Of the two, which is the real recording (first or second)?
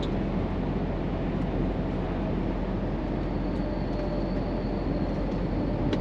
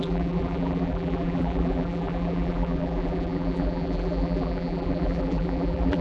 first